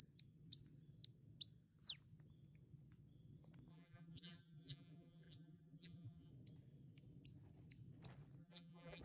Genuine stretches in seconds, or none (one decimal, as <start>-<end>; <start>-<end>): 0.0-3.7; 6.3-8.4